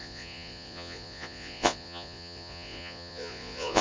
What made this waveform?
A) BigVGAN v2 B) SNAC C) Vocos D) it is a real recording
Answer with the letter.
C